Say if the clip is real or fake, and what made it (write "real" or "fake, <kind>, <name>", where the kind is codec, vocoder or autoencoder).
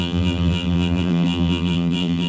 fake, vocoder, BigVGAN v2